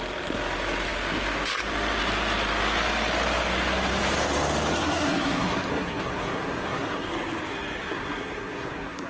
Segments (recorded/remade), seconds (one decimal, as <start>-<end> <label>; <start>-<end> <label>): 0.0-4.7 recorded; 4.7-7.1 remade; 7.1-7.5 recorded; 7.5-9.1 remade